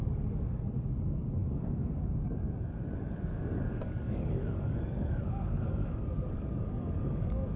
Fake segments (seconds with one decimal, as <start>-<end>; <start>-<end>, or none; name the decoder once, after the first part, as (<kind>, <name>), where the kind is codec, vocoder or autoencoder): 0.0-7.6 (codec, DAC)